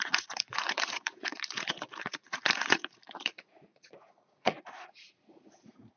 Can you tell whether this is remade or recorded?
remade